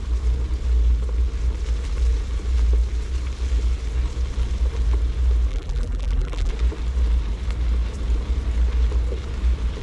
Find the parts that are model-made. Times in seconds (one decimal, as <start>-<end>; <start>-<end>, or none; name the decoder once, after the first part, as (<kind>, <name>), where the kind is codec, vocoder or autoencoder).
5.5-6.5 (vocoder, BigVGAN v2)